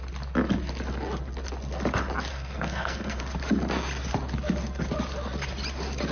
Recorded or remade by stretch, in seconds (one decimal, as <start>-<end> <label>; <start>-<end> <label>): 0.0-2.3 recorded; 2.3-3.2 remade; 3.2-6.1 recorded

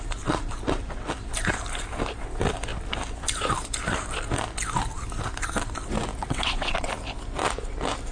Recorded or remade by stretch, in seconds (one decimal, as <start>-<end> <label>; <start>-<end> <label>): 0.0-6.2 recorded; 6.2-6.9 remade; 6.9-8.1 recorded

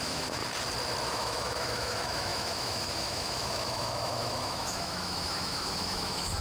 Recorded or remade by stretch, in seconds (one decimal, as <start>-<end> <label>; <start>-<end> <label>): 0.0-0.4 remade; 0.4-1.1 recorded; 1.1-6.4 remade

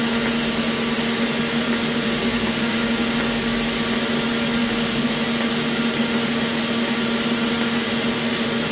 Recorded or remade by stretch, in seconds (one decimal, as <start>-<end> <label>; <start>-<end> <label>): 0.0-2.2 recorded; 2.2-3.2 remade; 3.2-4.6 recorded; 4.6-5.1 remade; 5.1-8.7 recorded

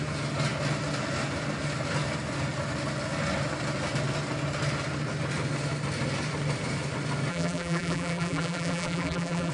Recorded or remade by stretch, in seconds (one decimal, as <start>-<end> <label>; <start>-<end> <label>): 0.0-7.3 recorded; 7.3-9.5 remade

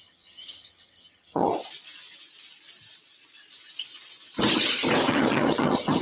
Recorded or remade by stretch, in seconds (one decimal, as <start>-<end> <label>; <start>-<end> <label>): 0.0-1.5 remade; 1.5-5.1 recorded; 5.1-6.0 remade